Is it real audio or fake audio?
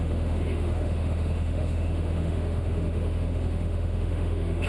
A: fake